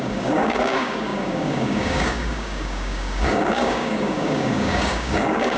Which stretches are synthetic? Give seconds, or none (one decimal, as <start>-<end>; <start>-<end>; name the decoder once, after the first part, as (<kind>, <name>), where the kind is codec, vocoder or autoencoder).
0.0-5.6 (codec, DAC)